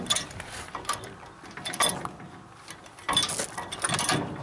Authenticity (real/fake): real